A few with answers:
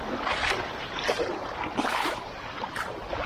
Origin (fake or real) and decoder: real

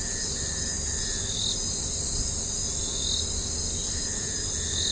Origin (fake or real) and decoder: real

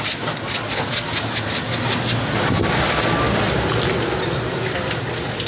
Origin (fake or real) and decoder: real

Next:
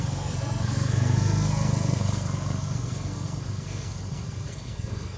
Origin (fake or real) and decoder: fake, codec, SNAC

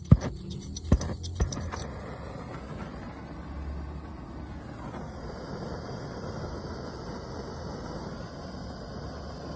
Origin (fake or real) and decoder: real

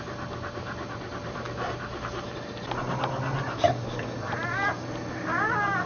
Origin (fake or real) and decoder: real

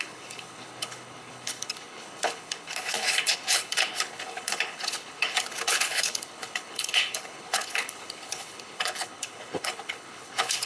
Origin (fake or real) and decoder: fake, codec, HILCodec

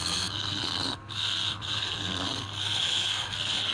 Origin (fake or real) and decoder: fake, codec, SNAC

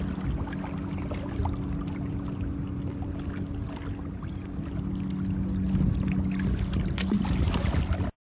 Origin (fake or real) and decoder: real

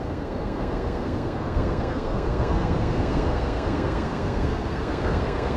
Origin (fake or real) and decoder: fake, codec, SNAC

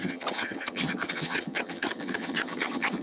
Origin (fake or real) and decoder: fake, vocoder, HiFi-GAN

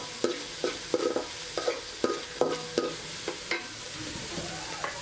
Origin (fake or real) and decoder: real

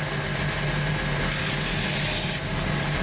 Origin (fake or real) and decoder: real